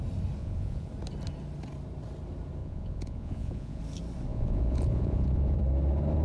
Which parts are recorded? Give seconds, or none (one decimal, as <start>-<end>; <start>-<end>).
0.0-0.4; 0.9-2.6; 3.8-4.3; 5.6-6.2